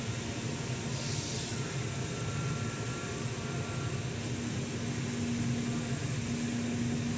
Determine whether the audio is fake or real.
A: real